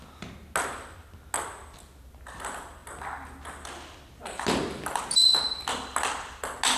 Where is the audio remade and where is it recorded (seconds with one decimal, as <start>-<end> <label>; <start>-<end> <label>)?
0.0-6.8 recorded